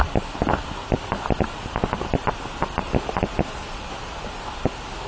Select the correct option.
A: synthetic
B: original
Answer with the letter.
B